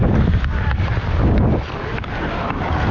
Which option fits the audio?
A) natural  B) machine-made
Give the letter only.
A